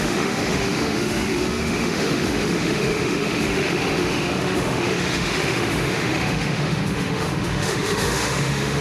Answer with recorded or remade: remade